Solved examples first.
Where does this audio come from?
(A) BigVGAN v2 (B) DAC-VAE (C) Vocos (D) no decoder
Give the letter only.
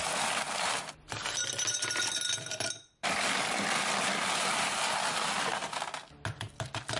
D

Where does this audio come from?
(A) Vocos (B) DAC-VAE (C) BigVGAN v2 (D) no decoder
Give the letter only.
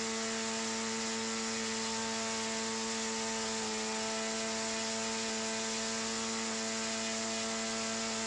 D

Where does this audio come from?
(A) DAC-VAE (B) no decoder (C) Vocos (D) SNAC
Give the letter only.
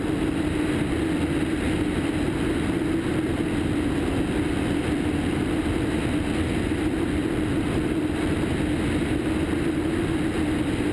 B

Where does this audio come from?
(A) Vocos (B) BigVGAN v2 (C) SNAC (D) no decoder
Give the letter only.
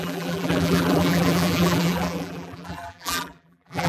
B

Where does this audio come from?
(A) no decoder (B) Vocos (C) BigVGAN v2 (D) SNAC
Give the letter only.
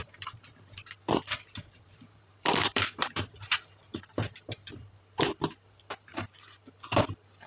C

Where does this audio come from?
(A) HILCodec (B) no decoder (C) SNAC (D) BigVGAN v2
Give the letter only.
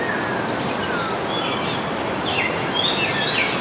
B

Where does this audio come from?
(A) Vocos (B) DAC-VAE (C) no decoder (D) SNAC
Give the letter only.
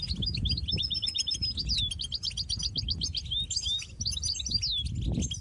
C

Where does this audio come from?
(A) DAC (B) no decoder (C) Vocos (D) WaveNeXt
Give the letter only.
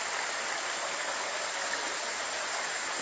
B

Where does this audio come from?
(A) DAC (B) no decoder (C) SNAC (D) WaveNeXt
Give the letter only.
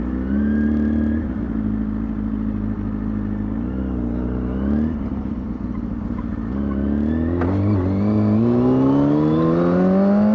B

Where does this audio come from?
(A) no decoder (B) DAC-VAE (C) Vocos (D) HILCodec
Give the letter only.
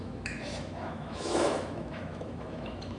B